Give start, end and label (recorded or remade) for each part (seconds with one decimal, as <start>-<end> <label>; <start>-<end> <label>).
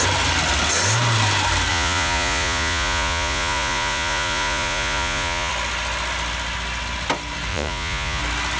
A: 0.0-1.7 recorded; 1.7-5.5 remade; 5.5-7.5 recorded; 7.5-8.2 remade; 8.2-8.6 recorded